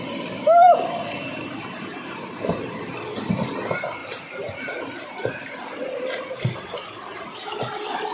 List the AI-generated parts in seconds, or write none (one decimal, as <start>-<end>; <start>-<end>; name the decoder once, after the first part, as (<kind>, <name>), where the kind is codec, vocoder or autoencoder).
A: none